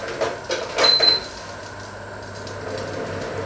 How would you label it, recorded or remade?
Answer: recorded